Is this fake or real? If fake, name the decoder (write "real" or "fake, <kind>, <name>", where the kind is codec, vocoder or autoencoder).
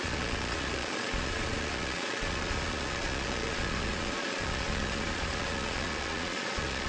fake, vocoder, Vocos